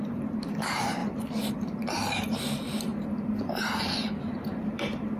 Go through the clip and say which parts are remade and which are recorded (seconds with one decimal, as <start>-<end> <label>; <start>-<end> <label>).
0.0-5.2 recorded